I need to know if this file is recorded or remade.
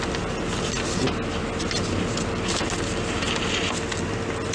recorded